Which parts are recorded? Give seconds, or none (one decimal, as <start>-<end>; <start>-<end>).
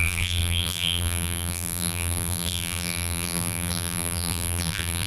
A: none